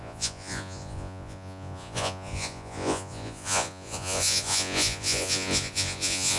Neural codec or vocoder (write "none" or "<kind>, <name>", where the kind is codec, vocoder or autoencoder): vocoder, Vocos